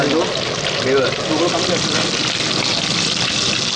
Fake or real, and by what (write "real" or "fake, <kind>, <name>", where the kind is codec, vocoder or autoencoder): real